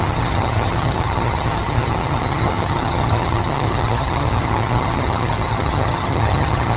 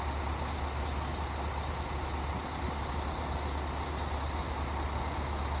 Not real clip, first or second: first